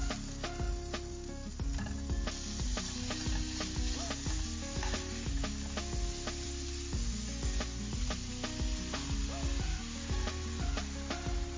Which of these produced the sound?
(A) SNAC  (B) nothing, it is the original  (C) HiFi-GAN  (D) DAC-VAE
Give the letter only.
B